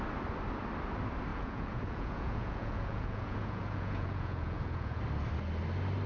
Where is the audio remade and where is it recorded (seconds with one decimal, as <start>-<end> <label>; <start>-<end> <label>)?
0.0-1.3 recorded; 1.3-5.0 remade; 5.0-6.1 recorded

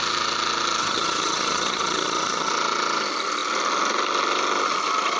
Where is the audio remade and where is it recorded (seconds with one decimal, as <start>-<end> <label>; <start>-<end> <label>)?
0.0-0.8 recorded; 0.8-2.5 remade; 2.5-5.2 recorded

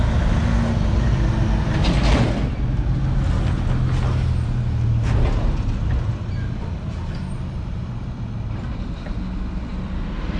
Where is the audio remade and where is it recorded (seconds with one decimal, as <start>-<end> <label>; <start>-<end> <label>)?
0.0-10.4 recorded

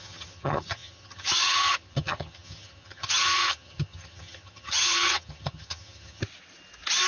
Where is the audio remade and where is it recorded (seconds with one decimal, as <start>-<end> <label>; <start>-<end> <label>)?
0.0-6.2 remade; 6.2-7.1 recorded

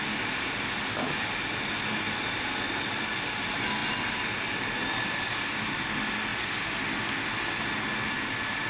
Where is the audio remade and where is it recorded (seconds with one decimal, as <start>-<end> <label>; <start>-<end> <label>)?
0.0-8.7 recorded

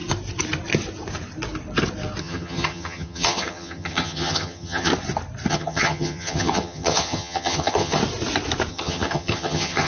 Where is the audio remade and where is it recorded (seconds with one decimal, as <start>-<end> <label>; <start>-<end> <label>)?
0.0-2.2 recorded; 2.2-4.9 remade; 4.9-5.5 recorded; 5.5-8.0 remade; 8.0-8.7 recorded; 8.7-9.9 remade

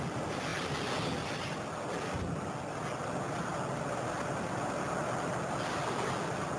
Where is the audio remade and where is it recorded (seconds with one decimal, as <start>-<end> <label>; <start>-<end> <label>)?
0.0-6.6 recorded

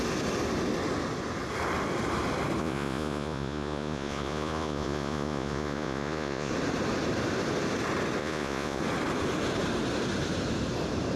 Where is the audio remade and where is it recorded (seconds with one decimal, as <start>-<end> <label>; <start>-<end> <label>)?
0.0-2.6 recorded; 2.6-6.5 remade; 6.5-8.2 recorded; 8.2-8.8 remade; 8.8-11.2 recorded